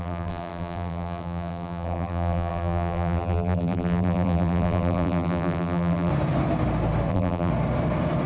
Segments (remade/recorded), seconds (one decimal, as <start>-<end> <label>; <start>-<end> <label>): 0.0-6.1 remade; 6.1-7.1 recorded; 7.1-7.5 remade; 7.5-8.3 recorded